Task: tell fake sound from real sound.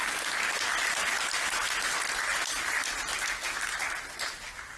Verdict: real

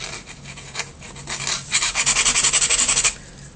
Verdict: real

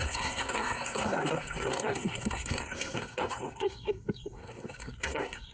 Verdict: fake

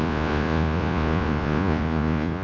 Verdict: fake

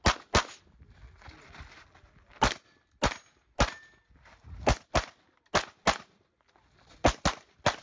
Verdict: real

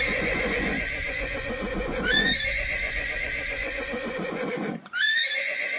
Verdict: fake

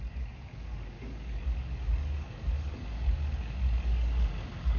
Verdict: fake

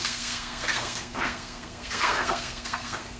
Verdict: fake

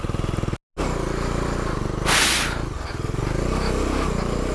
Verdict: real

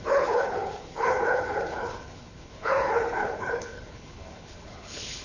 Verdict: fake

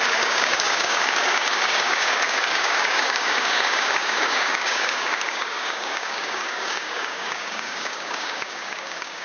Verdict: fake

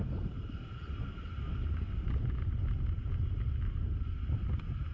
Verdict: real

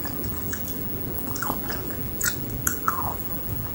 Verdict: fake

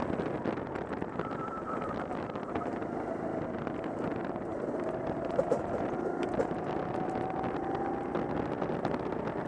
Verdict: real